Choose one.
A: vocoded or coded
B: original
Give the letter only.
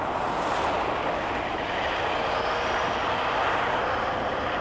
B